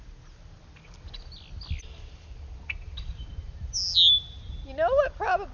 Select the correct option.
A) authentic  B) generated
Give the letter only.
A